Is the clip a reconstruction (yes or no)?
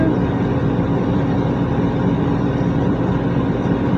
yes